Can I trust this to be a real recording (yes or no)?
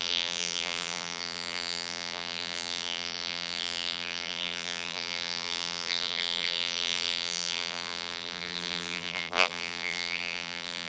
no